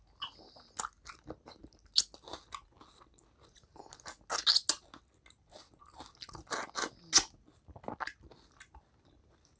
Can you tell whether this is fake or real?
real